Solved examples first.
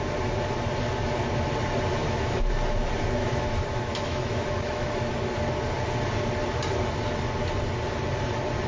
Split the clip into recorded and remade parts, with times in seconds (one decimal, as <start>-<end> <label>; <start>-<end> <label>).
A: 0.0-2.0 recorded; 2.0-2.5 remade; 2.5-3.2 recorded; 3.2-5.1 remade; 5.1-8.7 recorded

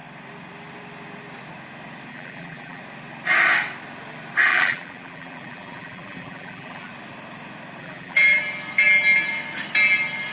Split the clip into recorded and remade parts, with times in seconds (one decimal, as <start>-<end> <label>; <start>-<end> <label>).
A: 0.0-2.1 recorded; 2.1-2.8 remade; 2.8-4.5 recorded; 4.5-6.9 remade; 6.9-7.8 recorded; 7.8-8.4 remade; 8.4-10.3 recorded

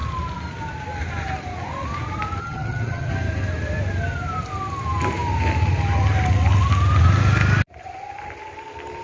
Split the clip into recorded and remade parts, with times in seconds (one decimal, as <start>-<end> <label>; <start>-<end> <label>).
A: 0.0-2.4 recorded; 2.4-3.1 remade; 3.1-9.0 recorded

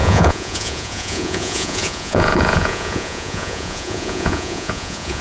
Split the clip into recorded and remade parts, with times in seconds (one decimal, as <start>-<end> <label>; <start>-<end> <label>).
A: 0.0-5.2 remade

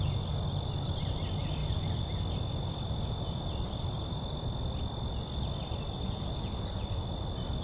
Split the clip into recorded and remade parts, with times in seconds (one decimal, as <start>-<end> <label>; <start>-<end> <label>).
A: 0.0-7.6 recorded

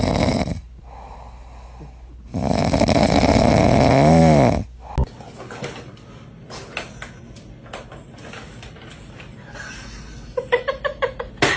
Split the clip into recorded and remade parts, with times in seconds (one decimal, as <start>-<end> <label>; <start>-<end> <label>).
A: 0.0-11.6 recorded

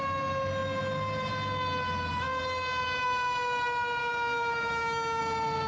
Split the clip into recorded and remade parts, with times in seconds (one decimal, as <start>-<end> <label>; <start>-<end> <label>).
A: 0.0-4.0 recorded; 4.0-5.2 remade; 5.2-5.7 recorded

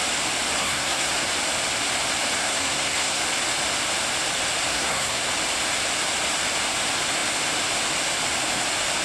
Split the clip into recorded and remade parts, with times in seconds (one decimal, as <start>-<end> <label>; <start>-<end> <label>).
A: 0.0-0.6 recorded; 0.6-1.1 remade; 1.1-2.4 recorded; 2.4-3.2 remade; 3.2-4.7 recorded; 4.7-5.3 remade; 5.3-9.0 recorded